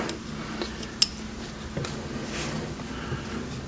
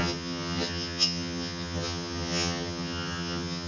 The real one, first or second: first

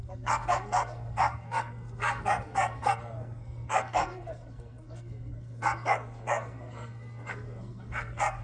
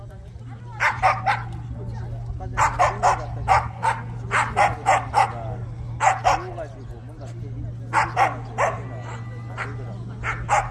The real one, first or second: second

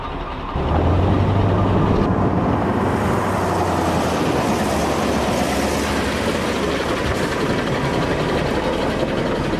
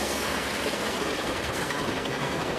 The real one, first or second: first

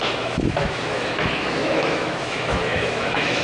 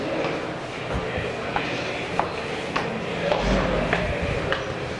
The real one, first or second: second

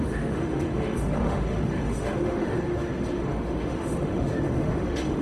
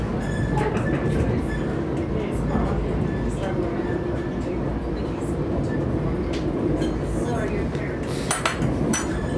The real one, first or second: second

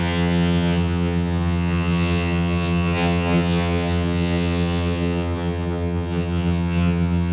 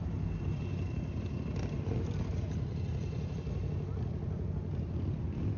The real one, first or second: second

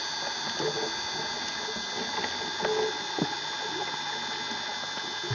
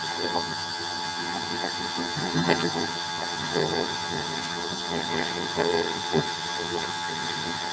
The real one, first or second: first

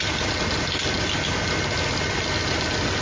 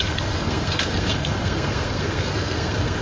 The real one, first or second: first